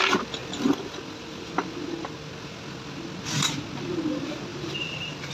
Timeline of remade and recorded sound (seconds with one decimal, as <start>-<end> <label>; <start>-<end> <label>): 0.0-4.5 recorded; 4.5-5.3 remade